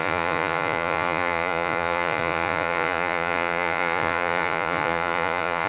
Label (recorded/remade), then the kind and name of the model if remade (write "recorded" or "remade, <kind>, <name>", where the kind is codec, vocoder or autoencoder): remade, vocoder, Vocos